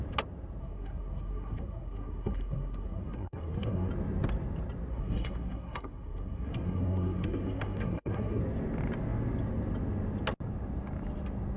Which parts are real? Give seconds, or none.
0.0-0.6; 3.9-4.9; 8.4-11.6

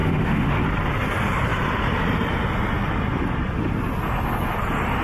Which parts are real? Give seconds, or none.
0.5-5.0

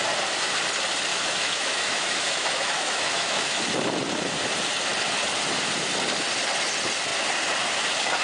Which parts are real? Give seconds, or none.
0.0-1.1; 3.6-8.2